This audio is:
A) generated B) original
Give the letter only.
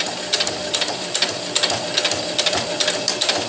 B